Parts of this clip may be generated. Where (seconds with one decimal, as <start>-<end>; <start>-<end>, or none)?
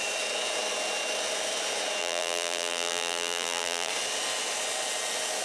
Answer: 2.0-3.9